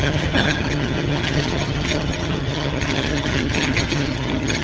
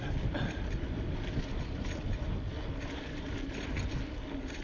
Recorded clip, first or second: second